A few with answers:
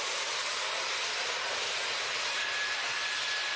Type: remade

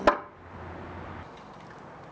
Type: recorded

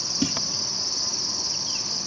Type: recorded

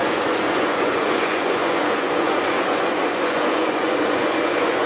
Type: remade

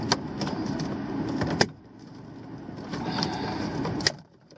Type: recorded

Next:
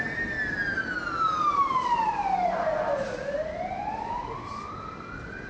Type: recorded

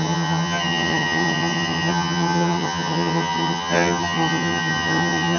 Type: remade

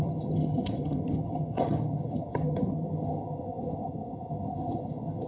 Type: remade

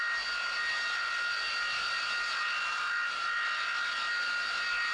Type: recorded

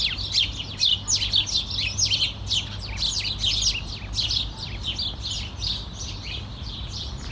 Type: recorded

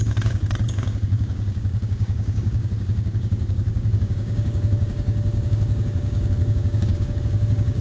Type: remade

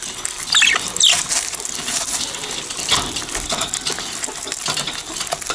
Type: recorded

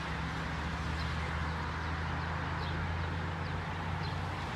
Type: recorded